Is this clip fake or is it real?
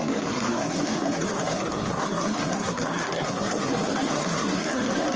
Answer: fake